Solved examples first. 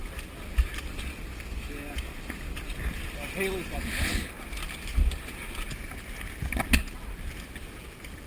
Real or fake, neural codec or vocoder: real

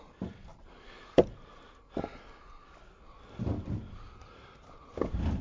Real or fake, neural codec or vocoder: real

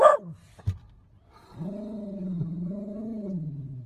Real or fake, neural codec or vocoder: fake, vocoder, BigVGAN v2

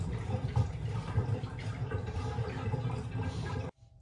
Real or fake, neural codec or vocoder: fake, vocoder, BigVGAN v2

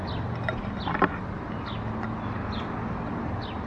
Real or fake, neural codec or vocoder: real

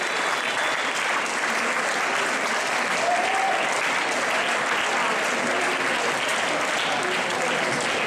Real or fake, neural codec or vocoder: real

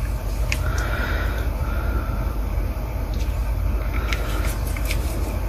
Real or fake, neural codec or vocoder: fake, vocoder, BigVGAN v2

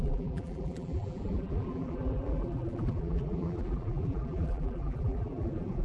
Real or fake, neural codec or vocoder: fake, vocoder, BigVGAN v2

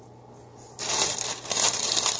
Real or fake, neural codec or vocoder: real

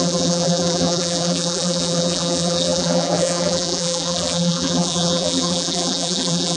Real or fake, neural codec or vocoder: fake, vocoder, BigVGAN v2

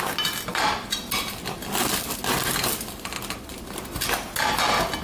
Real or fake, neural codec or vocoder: real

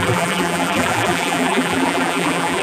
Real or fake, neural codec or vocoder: fake, vocoder, BigVGAN v2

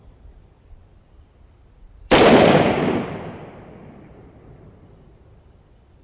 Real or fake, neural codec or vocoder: fake, vocoder, BigVGAN v2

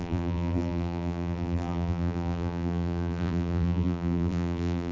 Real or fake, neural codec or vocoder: fake, vocoder, BigVGAN v2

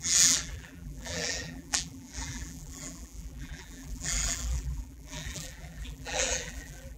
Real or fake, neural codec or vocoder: fake, vocoder, BigVGAN v2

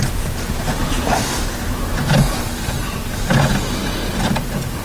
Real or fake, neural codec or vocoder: real